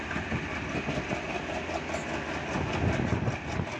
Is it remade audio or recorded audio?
recorded